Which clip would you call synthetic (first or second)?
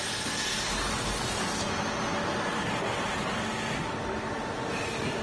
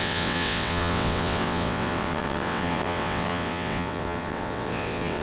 second